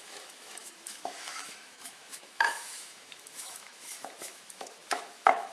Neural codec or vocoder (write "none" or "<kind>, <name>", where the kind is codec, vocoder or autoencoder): autoencoder, DAC-VAE